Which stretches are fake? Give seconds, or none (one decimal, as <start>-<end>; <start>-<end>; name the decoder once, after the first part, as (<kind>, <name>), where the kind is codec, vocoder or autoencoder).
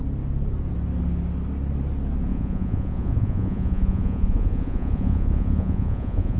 2.3-6.4 (vocoder, Vocos)